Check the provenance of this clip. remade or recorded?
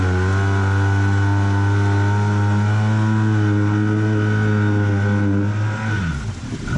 recorded